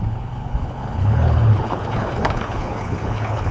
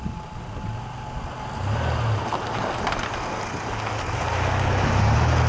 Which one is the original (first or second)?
second